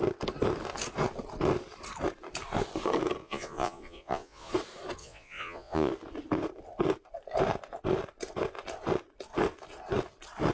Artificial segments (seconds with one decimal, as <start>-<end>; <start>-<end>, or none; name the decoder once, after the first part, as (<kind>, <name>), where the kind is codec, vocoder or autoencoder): 3.2-4.5 (vocoder, Vocos); 5.0-5.9